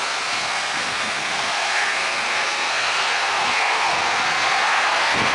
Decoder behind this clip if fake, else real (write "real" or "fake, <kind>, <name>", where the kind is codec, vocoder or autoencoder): fake, codec, SNAC